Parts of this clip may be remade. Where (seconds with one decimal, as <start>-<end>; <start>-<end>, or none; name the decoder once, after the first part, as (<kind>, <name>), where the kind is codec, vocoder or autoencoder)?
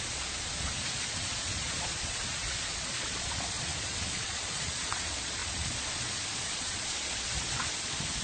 0.0-8.2 (vocoder, Vocos)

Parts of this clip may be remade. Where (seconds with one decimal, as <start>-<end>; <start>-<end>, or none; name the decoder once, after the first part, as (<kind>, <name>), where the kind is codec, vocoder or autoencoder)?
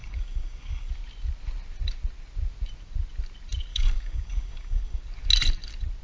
0.0-0.9 (codec, DAC); 3.7-5.0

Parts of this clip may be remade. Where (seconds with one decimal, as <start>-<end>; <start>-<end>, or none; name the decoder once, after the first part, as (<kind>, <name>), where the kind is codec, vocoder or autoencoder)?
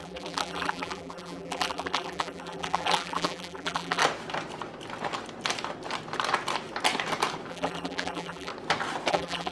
0.0-4.0 (vocoder, BigVGAN v2); 7.5-8.5; 9.1-9.5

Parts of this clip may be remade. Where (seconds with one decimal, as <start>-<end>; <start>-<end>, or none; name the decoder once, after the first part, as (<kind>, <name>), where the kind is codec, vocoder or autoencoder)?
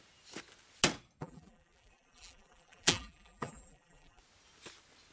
1.2-4.2 (vocoder, BigVGAN v2)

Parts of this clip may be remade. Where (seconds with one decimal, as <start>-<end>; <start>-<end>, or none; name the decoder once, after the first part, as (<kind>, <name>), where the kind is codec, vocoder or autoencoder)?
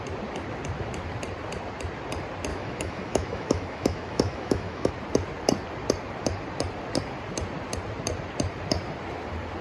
2.5-4.9 (autoencoder, DAC-VAE)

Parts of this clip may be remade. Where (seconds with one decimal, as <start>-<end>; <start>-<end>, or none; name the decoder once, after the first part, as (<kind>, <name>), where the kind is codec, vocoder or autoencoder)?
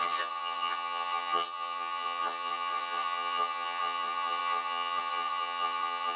0.0-6.2 (vocoder, HiFi-GAN)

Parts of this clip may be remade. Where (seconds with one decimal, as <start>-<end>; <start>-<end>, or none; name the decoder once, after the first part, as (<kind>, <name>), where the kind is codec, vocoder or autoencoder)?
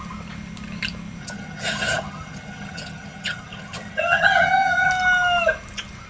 1.2-4.9 (vocoder, HiFi-GAN)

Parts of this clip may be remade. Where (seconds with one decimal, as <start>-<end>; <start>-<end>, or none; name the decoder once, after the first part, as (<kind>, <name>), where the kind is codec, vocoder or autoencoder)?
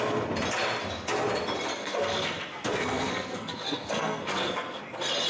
1.8-4.8 (codec, SNAC)